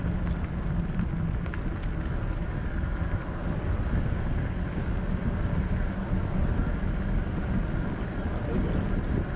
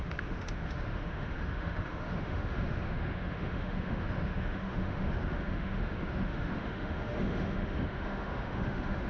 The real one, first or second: first